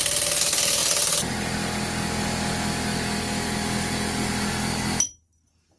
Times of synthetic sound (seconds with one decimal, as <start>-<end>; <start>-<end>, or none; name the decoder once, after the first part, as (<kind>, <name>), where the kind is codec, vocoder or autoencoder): none